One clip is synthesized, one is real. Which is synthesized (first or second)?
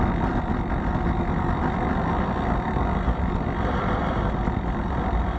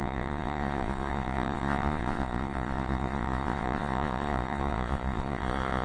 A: second